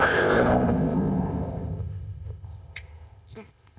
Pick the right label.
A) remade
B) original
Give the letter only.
A